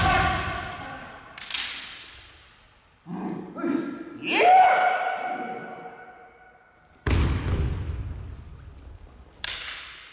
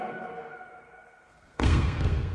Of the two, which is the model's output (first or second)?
second